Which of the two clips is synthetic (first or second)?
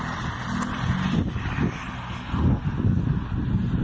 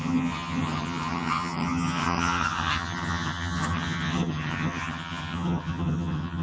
second